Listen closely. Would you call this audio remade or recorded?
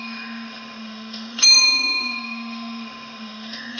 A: remade